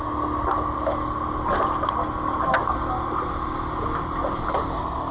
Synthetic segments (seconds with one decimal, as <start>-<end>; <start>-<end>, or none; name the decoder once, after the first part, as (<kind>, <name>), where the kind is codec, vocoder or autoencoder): none